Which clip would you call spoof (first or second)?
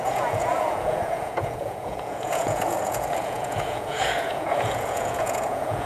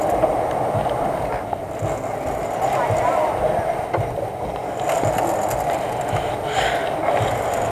first